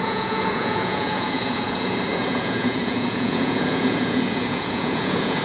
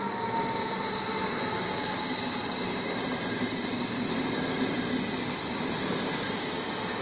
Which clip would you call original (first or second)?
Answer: second